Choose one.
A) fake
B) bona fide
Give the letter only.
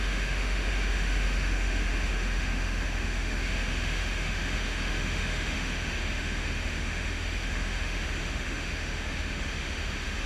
A